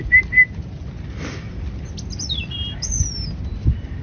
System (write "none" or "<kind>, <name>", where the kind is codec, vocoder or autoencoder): none